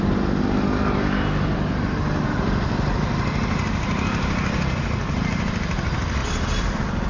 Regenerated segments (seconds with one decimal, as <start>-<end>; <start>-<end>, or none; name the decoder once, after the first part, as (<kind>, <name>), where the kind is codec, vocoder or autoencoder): 6.2-7.1 (vocoder, BigVGAN v2)